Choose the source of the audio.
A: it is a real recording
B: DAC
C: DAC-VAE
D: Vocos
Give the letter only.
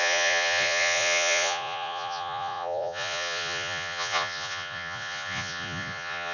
D